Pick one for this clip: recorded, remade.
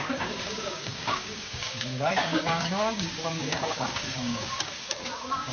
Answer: remade